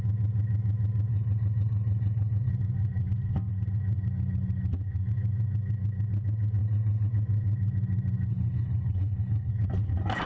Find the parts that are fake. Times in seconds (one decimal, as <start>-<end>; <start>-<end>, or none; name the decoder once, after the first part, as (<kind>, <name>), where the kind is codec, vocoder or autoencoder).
1.1-2.5 (codec, HILCodec); 6.6-7.1; 8.3-9.5